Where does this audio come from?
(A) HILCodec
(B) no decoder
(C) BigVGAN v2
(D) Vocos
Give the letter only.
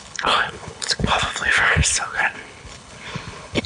A